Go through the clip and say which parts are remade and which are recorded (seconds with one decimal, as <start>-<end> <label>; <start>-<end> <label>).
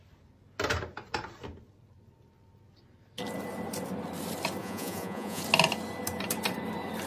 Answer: 0.0-4.6 recorded; 4.6-5.4 remade; 5.4-7.1 recorded